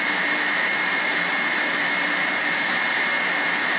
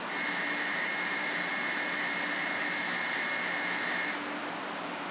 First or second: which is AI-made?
first